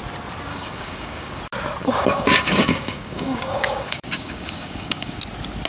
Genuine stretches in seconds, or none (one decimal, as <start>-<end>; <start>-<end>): 0.0-0.5; 1.4-1.8; 5.2-5.7